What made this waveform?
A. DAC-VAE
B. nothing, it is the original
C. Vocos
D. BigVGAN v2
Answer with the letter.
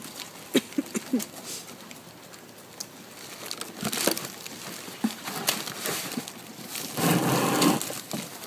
B